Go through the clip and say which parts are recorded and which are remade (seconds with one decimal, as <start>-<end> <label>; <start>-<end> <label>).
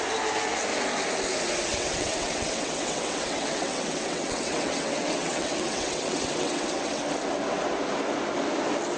0.0-1.7 recorded; 1.7-7.0 remade; 7.0-9.0 recorded